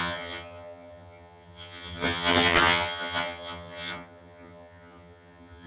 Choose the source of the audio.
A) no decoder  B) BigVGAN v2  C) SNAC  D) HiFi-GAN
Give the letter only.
D